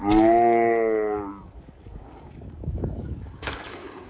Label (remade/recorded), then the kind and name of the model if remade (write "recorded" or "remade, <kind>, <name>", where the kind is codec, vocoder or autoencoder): remade, codec, DAC